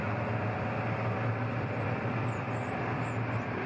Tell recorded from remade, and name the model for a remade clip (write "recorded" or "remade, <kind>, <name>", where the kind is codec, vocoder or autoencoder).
remade, vocoder, BigVGAN v2